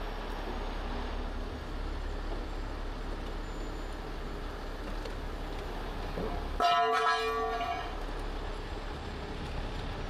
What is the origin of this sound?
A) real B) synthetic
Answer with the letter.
A